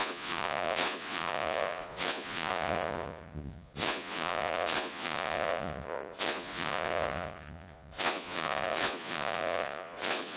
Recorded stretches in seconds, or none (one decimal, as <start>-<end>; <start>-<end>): none